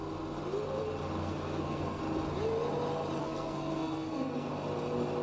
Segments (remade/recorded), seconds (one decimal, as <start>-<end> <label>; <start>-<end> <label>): 0.0-1.2 recorded; 1.2-2.0 remade; 2.0-3.2 recorded; 3.2-4.5 remade; 4.5-5.2 recorded